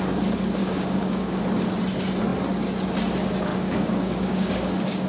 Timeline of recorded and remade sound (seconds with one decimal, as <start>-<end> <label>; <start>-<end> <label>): 0.0-0.6 recorded; 0.6-1.4 remade; 1.4-3.5 recorded; 3.5-5.1 remade